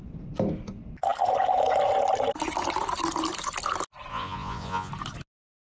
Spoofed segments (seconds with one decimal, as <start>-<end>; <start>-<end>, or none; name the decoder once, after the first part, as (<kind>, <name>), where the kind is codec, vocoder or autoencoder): 4.1-4.9 (vocoder, Vocos)